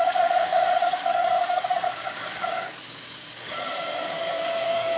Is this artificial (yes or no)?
yes